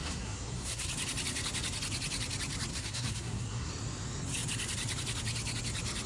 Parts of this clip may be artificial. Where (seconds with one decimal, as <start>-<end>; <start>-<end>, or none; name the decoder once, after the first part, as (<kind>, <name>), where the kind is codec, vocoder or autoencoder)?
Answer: 0.0-0.9 (codec, SNAC); 2.7-3.7